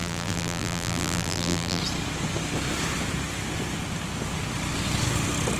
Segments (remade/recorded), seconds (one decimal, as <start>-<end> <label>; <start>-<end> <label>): 0.0-1.8 remade; 1.8-5.6 recorded